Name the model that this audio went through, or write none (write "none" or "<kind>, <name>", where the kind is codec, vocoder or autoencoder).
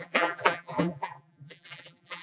vocoder, BigVGAN v2